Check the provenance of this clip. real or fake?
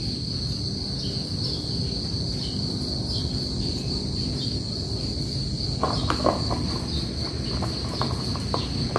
real